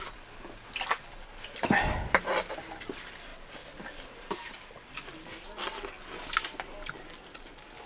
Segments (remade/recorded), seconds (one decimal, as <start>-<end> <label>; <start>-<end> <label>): 0.0-7.9 recorded